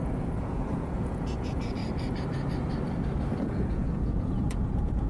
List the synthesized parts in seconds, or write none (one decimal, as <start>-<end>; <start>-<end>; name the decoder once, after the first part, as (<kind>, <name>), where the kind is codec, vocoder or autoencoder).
0.0-1.8 (vocoder, Vocos); 3.4-5.1